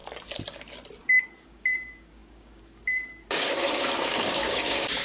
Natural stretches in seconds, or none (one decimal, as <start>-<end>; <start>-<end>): 0.0-1.4